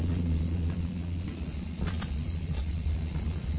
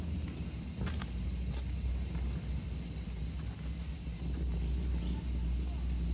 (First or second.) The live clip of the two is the second